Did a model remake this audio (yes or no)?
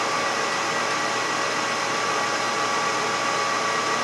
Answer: no